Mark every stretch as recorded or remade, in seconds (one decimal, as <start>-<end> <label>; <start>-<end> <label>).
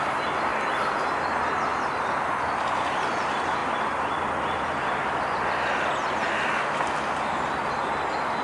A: 0.0-1.7 recorded; 1.7-3.1 remade; 3.1-3.6 recorded; 3.6-4.9 remade; 4.9-8.4 recorded